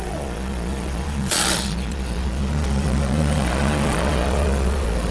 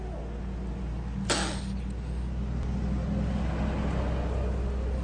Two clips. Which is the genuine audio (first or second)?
second